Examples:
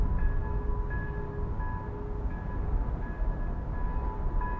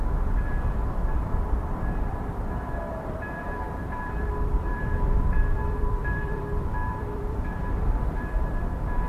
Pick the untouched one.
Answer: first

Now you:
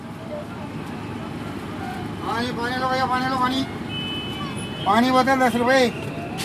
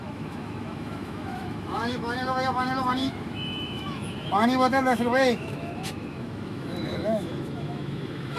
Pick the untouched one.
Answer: first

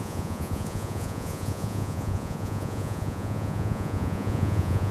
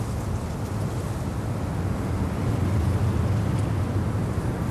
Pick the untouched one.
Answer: second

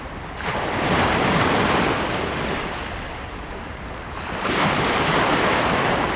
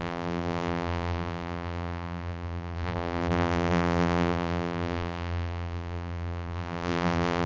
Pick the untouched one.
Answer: first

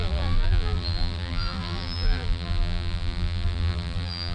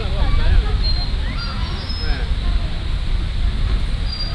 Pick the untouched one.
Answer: second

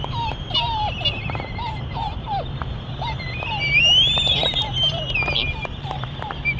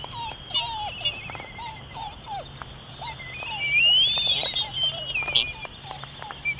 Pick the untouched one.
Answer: second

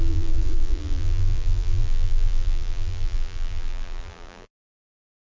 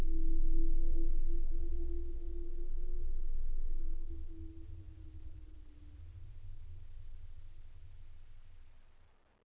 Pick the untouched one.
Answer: second